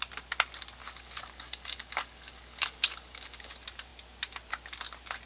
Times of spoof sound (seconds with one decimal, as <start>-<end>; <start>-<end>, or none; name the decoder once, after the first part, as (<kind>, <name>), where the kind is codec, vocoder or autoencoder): 0.8-3.5 (codec, DAC)